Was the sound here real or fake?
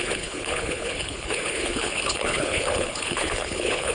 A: fake